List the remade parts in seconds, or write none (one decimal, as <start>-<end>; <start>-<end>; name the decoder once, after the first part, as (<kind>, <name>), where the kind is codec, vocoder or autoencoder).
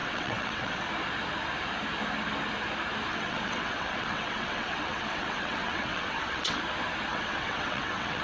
0.0-0.9 (vocoder, WaveNeXt); 3.1-6.6; 7.1-8.2